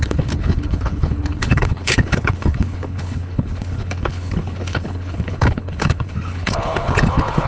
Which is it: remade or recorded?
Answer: remade